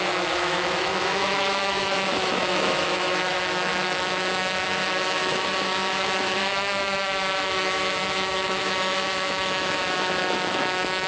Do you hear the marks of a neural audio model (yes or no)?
yes